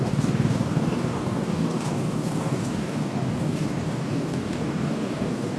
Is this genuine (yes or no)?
no